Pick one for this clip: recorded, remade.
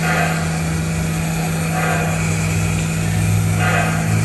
recorded